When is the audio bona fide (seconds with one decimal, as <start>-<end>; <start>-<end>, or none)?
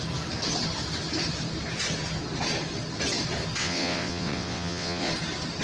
0.0-3.6; 5.1-5.6